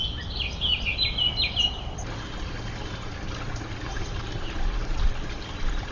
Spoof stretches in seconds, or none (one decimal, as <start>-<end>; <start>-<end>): none